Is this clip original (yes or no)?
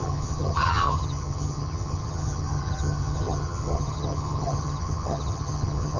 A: no